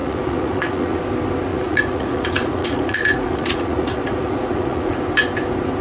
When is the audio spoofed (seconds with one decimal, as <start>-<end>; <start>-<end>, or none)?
0.0-1.0; 1.5-5.0